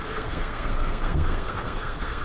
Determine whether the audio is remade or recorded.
remade